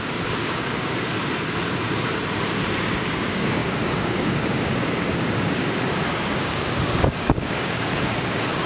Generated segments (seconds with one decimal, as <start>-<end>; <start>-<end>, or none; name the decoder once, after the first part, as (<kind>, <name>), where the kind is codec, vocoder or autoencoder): 0.0-1.1 (codec, DAC); 2.8-8.7